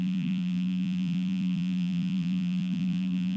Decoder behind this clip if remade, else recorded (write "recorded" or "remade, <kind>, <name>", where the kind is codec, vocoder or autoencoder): remade, vocoder, BigVGAN v2